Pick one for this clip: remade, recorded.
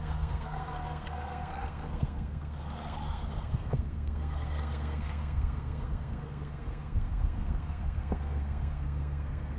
remade